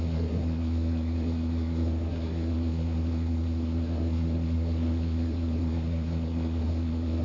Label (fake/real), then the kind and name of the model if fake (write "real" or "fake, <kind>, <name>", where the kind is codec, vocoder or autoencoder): fake, codec, SNAC